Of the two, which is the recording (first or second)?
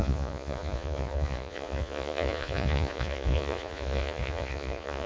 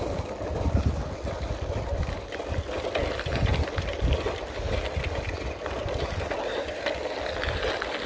second